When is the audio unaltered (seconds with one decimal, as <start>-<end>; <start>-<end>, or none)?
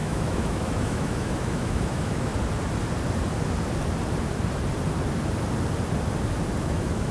2.3-6.6